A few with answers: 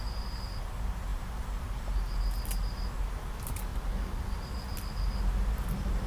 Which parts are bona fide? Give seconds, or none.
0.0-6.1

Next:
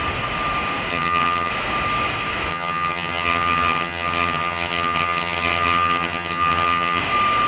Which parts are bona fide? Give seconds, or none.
0.0-0.9; 1.5-2.5; 7.0-7.5

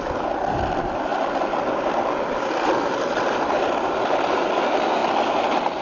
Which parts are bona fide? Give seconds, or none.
0.0-1.1; 4.6-5.8

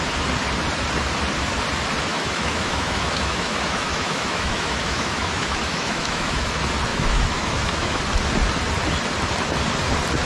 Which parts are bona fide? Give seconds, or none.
0.0-2.1; 6.5-6.9; 8.0-10.3

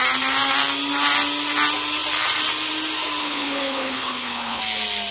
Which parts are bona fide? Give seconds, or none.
0.0-3.2; 4.6-5.1

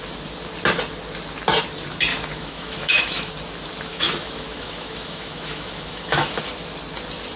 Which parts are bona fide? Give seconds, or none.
0.0-2.1; 3.3-3.9; 6.4-7.4

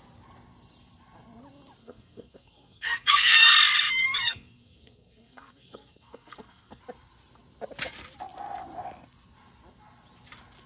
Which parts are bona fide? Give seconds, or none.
0.0-1.8; 3.5-4.0; 6.8-10.7